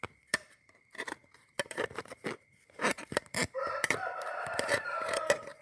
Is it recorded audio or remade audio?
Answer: remade